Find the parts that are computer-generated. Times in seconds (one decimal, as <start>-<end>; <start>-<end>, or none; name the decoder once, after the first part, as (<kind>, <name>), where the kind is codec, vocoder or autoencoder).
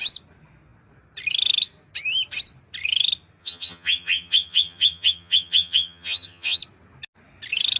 3.4-6.6 (vocoder, HiFi-GAN)